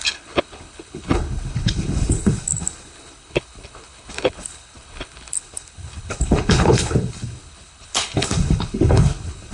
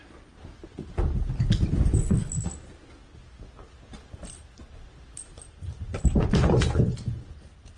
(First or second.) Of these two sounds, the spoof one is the first